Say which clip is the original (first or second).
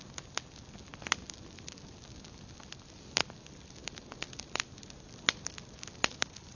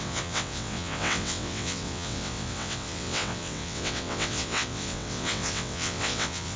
first